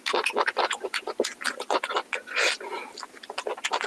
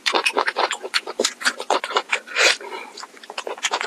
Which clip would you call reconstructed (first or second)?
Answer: second